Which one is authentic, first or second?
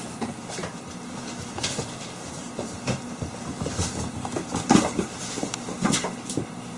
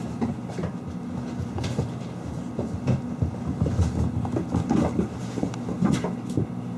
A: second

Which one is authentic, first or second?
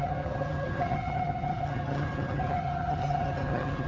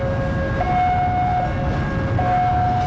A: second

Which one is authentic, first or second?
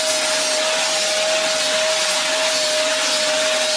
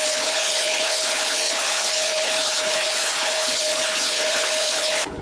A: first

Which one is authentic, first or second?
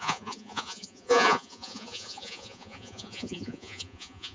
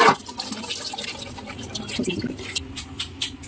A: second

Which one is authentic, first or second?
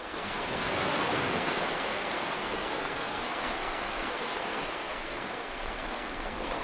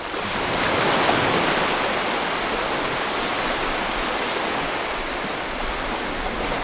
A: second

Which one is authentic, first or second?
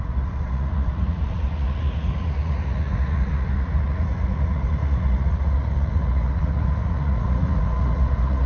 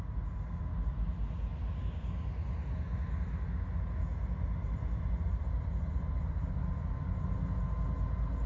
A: second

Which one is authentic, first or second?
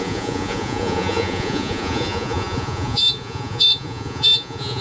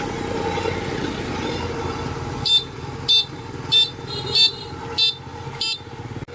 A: second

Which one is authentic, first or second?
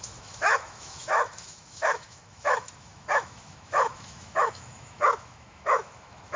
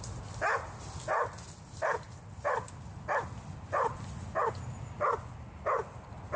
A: second